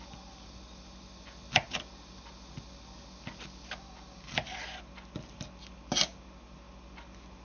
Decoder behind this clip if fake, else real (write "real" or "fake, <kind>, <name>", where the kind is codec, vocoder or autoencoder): real